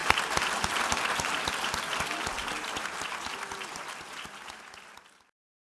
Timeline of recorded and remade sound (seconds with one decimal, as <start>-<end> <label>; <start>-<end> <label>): 0.0-2.3 recorded; 2.3-5.6 remade

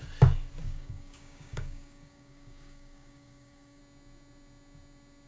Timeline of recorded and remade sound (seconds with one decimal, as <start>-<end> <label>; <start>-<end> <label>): 0.0-0.6 recorded; 0.6-3.8 remade; 3.8-5.3 recorded

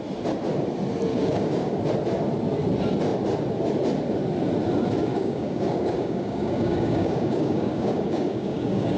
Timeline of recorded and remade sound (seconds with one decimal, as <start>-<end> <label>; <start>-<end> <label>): 0.0-1.1 recorded; 1.1-1.8 remade; 1.8-5.1 recorded; 5.1-9.0 remade